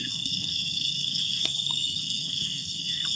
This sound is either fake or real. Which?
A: fake